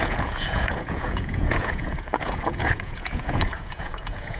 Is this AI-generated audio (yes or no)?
yes